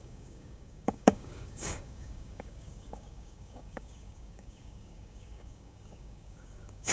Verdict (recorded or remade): remade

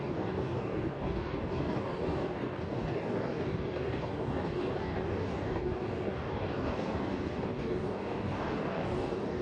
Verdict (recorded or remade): remade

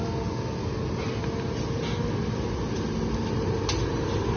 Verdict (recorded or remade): recorded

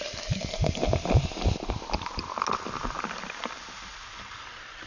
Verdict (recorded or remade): recorded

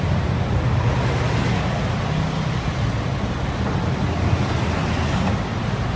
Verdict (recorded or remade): recorded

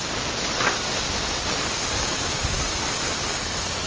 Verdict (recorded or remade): recorded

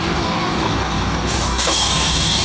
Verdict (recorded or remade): remade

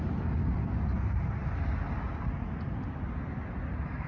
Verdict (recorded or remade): recorded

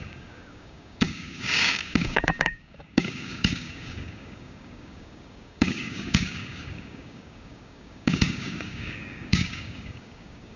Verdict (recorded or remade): remade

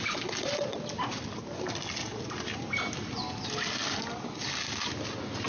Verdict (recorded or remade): recorded